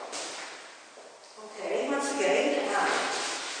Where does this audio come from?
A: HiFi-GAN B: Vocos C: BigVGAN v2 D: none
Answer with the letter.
D